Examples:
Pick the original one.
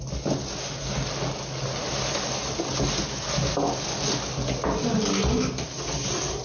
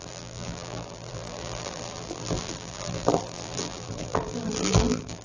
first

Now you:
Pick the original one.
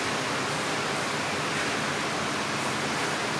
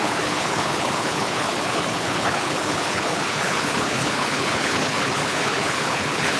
first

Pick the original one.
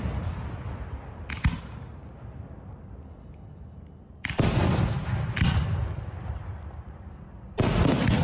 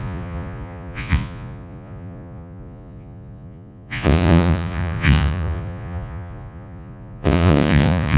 first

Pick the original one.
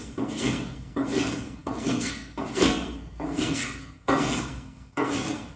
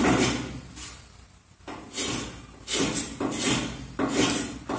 second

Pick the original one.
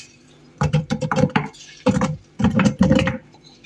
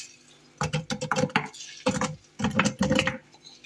second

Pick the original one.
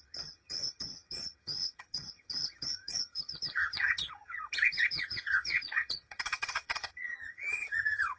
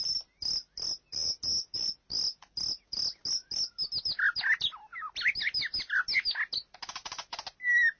second